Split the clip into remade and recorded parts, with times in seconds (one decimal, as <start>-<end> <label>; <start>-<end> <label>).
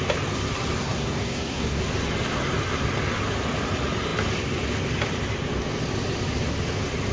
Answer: 0.0-0.8 recorded; 0.8-1.8 remade; 1.8-7.1 recorded